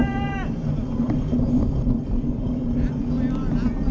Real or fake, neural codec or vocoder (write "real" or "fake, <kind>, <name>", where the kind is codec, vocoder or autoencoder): real